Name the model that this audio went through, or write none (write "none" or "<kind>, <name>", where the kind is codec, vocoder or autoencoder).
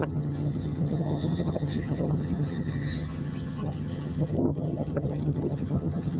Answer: vocoder, HiFi-GAN